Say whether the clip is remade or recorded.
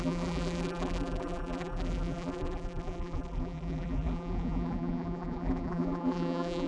remade